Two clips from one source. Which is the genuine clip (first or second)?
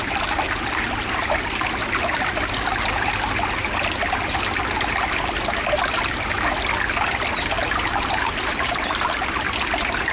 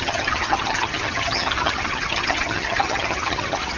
first